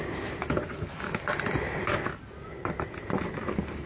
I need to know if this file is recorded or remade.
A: recorded